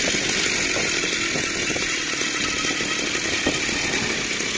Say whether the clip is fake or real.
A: real